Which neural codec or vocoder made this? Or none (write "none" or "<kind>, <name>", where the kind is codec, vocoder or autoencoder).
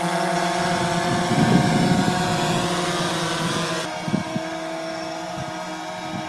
none